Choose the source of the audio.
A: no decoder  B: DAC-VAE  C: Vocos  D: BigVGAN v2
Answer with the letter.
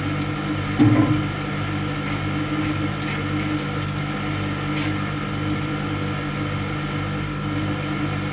A